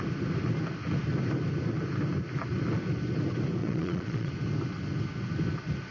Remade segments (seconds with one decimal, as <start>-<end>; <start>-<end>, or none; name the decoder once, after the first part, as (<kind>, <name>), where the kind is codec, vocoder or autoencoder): 3.6-4.3 (vocoder, Vocos)